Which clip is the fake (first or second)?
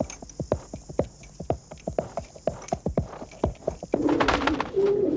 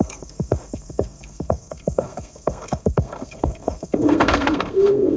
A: second